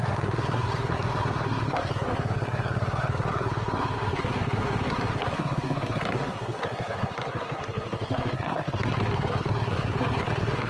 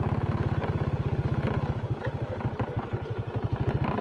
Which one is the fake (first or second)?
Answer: first